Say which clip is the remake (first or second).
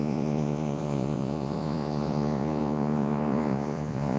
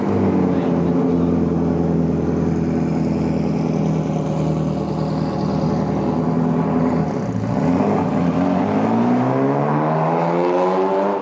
first